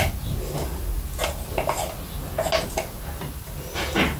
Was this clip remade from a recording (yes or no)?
no